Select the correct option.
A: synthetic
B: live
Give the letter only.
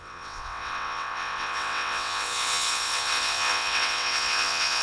A